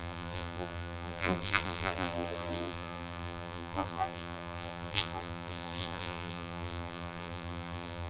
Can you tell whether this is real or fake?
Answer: fake